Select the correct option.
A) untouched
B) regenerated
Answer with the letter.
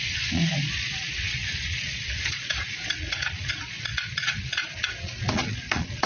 B